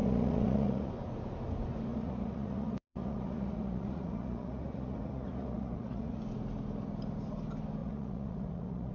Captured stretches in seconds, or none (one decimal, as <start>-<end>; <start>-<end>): 0.9-1.9; 6.2-7.8